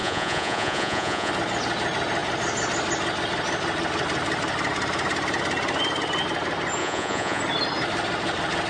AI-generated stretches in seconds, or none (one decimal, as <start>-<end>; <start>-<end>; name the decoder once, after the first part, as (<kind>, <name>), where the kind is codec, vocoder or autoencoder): 0.0-1.3 (vocoder, Vocos); 6.8-7.4